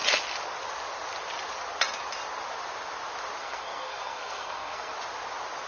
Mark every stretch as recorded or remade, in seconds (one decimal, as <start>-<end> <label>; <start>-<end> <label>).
0.0-3.4 recorded; 3.4-4.9 remade; 4.9-5.7 recorded

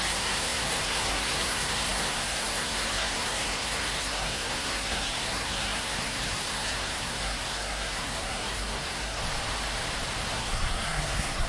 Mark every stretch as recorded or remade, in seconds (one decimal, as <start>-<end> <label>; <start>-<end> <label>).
0.0-9.2 remade; 9.2-10.3 recorded; 10.3-11.5 remade

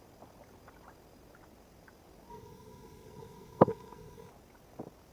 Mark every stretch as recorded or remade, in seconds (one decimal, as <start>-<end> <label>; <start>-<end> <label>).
0.0-2.3 recorded; 2.3-4.3 remade; 4.3-5.1 recorded

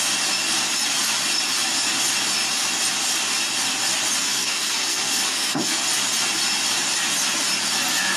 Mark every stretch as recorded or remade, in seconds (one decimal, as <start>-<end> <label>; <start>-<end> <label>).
0.0-4.2 recorded; 4.2-5.8 remade; 5.8-8.2 recorded

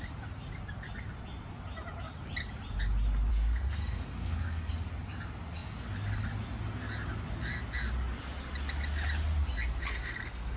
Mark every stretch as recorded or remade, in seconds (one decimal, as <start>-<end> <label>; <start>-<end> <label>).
0.0-3.3 recorded; 3.3-4.7 remade; 4.7-9.8 recorded; 9.8-10.6 remade

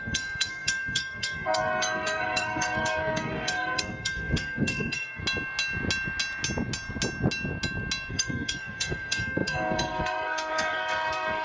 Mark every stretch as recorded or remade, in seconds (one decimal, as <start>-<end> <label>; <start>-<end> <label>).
0.0-5.2 remade; 5.2-8.1 recorded; 8.1-11.4 remade

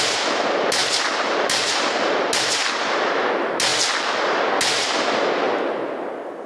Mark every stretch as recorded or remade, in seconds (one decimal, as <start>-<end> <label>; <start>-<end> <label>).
0.0-6.5 recorded

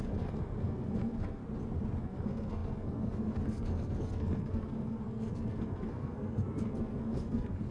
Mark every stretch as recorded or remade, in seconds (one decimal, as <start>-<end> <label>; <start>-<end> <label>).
0.0-1.4 remade; 1.4-2.0 recorded; 2.0-7.7 remade